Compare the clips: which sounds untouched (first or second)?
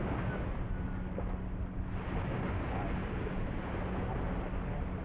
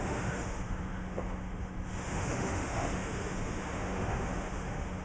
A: first